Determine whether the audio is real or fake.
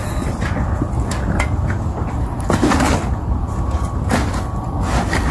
real